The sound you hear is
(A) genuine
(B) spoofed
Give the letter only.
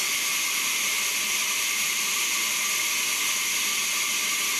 A